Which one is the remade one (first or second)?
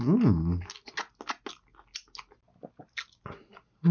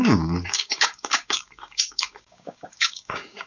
second